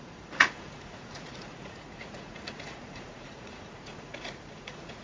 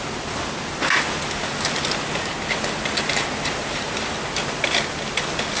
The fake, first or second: first